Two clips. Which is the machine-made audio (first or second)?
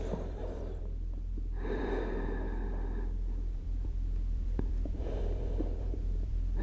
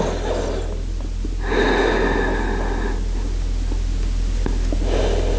first